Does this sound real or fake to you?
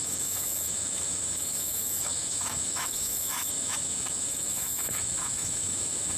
fake